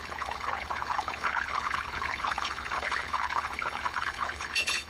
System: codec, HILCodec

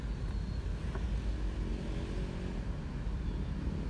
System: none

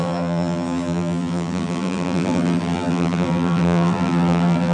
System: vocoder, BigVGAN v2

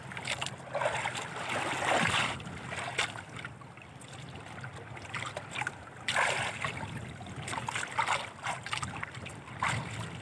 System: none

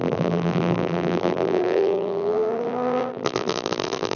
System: vocoder, BigVGAN v2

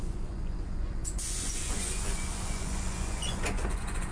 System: vocoder, Vocos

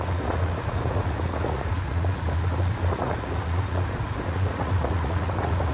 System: vocoder, Vocos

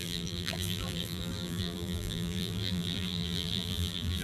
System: vocoder, BigVGAN v2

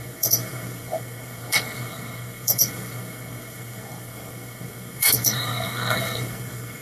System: codec, SNAC